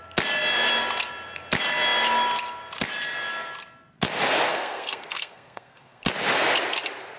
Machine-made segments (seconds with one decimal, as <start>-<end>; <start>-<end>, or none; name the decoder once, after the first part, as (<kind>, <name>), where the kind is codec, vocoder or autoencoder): 4.5-6.0 (codec, SNAC)